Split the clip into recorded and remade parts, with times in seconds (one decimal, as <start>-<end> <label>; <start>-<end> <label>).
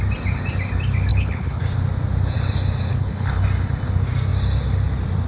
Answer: 0.0-1.1 recorded; 1.1-1.6 remade; 1.6-2.9 recorded; 2.9-3.4 remade; 3.4-5.3 recorded